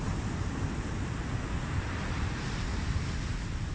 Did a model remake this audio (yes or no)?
no